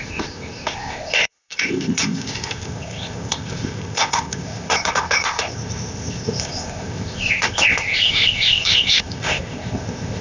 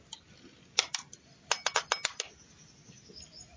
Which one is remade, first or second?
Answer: first